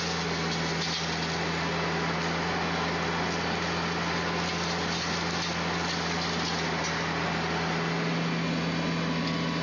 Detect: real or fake real